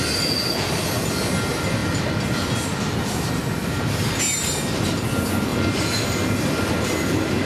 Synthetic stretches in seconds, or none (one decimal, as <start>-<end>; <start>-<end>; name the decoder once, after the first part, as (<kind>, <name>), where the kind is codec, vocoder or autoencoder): none